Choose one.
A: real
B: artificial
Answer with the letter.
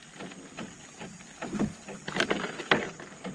A